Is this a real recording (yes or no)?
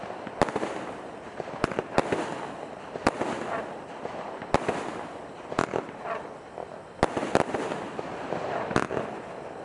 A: yes